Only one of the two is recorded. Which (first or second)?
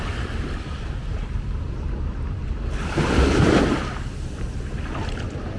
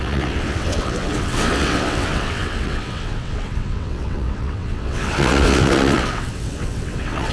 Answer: first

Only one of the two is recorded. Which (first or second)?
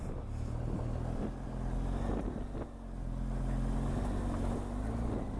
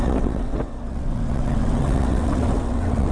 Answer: first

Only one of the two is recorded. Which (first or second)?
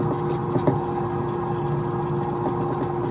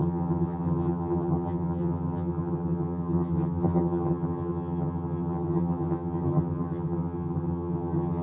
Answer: first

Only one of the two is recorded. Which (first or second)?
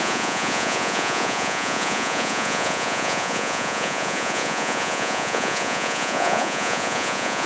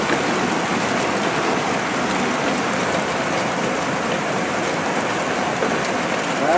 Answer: second